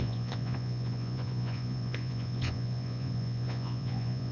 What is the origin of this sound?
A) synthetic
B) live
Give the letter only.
A